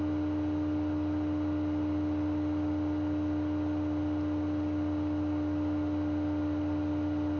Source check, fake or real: real